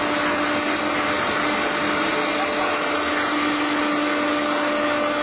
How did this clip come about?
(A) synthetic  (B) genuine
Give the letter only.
B